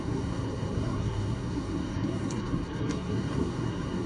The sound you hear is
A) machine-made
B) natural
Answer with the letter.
A